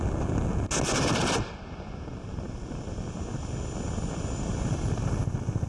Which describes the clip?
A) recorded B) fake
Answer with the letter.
A